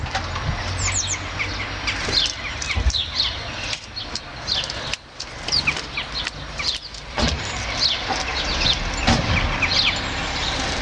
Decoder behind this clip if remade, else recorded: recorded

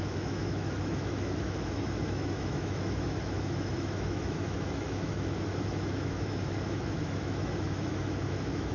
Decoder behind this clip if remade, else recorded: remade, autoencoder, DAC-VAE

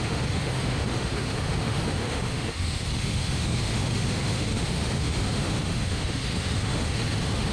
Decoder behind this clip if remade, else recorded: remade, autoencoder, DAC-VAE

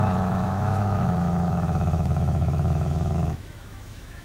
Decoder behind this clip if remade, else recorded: remade, autoencoder, DAC-VAE